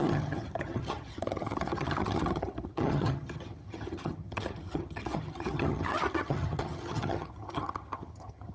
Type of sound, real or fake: fake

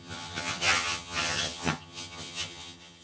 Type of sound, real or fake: fake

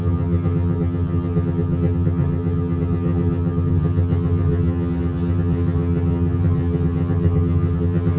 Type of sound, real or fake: fake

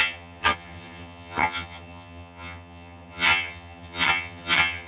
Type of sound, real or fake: fake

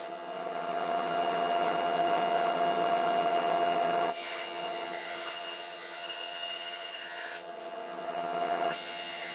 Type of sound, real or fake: fake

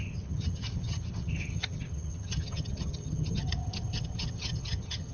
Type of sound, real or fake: fake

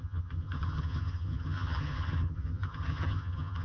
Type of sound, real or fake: fake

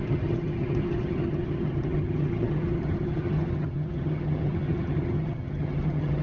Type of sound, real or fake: fake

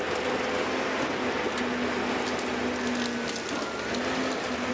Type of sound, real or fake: real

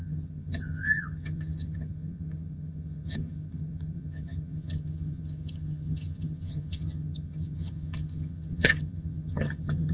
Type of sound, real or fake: fake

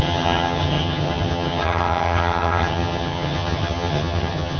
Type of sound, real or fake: fake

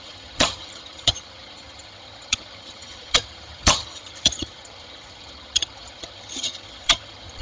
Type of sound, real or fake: fake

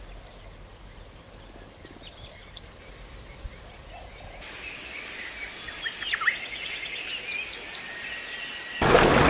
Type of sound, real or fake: real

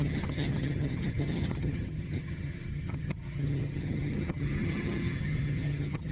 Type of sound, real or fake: fake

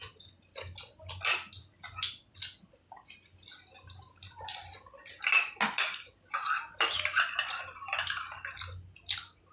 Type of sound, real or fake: real